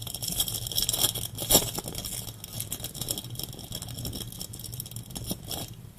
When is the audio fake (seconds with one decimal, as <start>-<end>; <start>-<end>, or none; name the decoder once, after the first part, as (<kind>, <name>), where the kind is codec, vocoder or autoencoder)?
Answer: 0.0-0.5 (vocoder, BigVGAN v2)